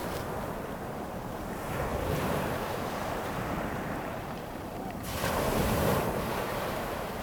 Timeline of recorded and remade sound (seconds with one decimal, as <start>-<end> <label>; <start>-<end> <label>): 0.0-0.7 recorded; 0.7-5.0 remade; 5.0-5.6 recorded; 5.6-7.2 remade